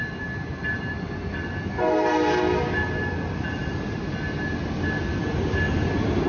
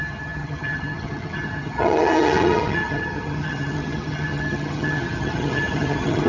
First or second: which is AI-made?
second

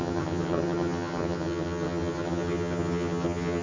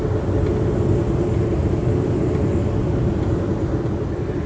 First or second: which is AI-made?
first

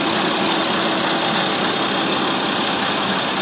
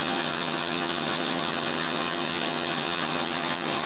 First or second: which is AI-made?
second